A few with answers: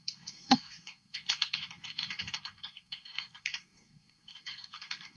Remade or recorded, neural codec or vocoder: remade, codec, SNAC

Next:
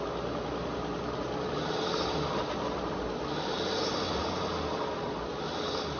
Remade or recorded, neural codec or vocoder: recorded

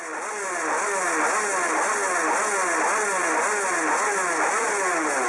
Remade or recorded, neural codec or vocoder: recorded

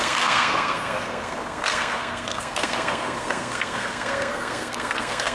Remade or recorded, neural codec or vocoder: remade, codec, SNAC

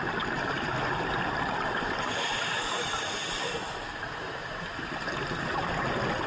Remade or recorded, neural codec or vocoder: recorded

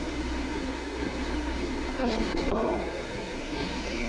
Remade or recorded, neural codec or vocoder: remade, codec, SNAC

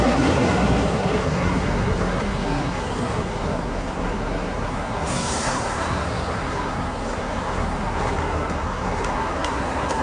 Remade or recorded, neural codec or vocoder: remade, codec, SNAC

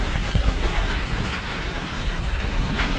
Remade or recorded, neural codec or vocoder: remade, codec, SNAC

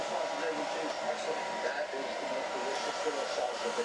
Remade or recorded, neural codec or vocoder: recorded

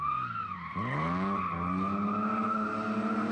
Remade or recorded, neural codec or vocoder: recorded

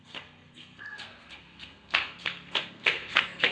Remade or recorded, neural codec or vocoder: remade, codec, SNAC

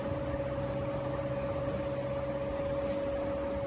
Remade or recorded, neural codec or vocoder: recorded